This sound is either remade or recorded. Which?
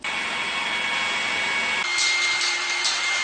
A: recorded